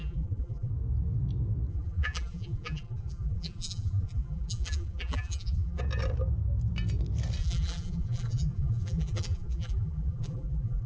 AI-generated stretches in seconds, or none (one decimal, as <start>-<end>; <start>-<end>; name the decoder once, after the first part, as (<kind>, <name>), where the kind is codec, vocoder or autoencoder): 0.0-0.7 (vocoder, BigVGAN v2); 1.7-5.8; 7.4-10.9